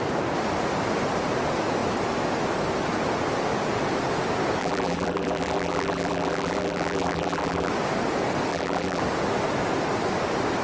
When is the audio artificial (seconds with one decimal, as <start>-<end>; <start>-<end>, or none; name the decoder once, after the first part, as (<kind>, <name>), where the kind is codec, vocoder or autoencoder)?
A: 4.6-7.7 (vocoder, BigVGAN v2); 8.5-9.0